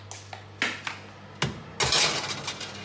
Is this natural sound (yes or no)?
yes